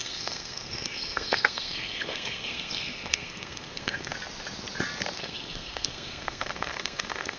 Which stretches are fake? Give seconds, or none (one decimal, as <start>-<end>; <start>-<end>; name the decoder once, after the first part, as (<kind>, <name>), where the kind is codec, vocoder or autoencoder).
0.0-4.1 (codec, SNAC); 5.2-7.4